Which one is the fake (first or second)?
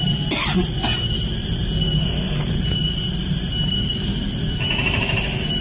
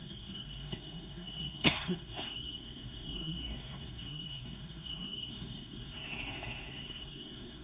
second